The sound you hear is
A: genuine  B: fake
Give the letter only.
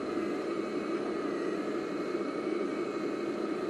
A